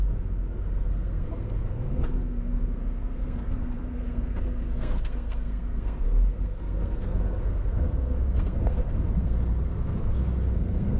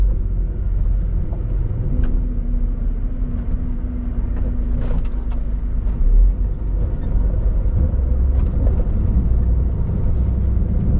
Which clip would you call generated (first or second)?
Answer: first